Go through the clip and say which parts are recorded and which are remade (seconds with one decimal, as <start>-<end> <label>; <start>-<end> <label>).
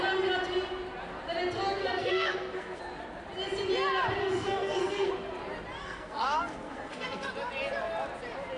0.0-1.8 recorded; 1.8-2.8 remade; 2.8-4.2 recorded; 4.2-5.1 remade; 5.1-5.8 recorded; 5.8-7.3 remade; 7.3-8.6 recorded